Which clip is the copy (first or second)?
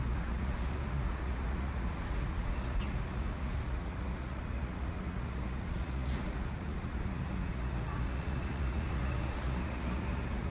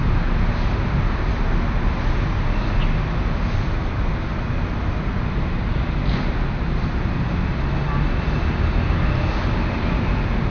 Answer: first